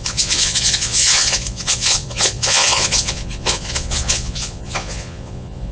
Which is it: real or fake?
fake